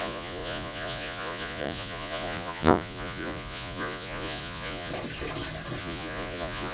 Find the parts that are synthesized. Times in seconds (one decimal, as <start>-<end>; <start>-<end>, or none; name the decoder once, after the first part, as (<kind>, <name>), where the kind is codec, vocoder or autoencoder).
0.0-4.9 (vocoder, Vocos); 5.8-6.7